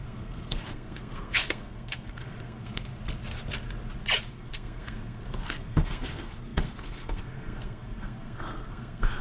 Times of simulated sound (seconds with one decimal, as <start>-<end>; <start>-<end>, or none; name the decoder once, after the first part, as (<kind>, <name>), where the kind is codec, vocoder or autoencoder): 0.0-2.9 (codec, SNAC); 4.3-9.2